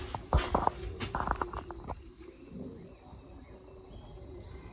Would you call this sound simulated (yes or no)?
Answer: no